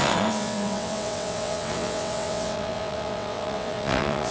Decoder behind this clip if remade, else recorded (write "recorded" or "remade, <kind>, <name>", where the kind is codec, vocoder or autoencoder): remade, vocoder, WaveNeXt